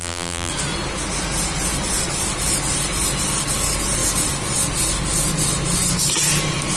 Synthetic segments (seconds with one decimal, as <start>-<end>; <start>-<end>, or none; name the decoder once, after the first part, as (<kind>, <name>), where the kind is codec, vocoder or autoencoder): 0.0-0.5 (vocoder, BigVGAN v2)

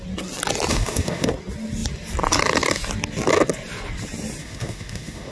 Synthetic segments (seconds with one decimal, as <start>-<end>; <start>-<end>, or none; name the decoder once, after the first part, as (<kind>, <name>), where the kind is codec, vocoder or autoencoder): 0.7-1.3 (autoencoder, DAC-VAE); 4.4-5.3

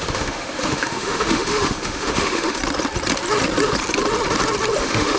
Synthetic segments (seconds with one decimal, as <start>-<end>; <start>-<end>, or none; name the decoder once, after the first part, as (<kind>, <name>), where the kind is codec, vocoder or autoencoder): 0.0-2.6 (autoencoder, DAC-VAE); 4.8-5.2

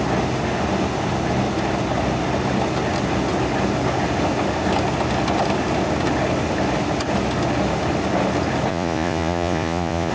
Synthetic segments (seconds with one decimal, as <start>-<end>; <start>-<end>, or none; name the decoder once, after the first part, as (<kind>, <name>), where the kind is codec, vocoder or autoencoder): 8.7-10.1 (vocoder, Vocos)

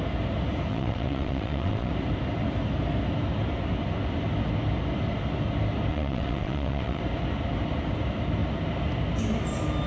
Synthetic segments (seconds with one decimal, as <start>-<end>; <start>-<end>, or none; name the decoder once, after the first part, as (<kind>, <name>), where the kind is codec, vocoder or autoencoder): 0.7-1.9 (vocoder, WaveNeXt); 5.9-7.0

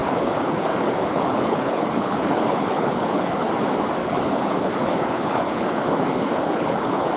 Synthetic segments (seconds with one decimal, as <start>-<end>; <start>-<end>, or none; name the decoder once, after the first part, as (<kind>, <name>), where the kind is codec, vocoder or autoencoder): 0.0-3.5 (codec, HILCodec); 4.0-7.2

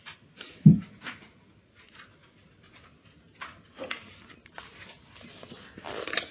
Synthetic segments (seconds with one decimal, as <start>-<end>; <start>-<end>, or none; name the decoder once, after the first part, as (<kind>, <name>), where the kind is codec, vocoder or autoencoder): none